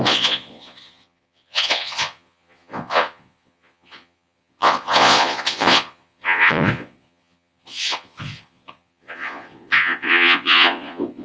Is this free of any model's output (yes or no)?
no